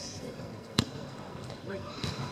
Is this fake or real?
fake